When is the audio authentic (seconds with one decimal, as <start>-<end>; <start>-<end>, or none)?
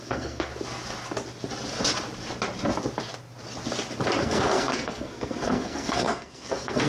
0.5-4.2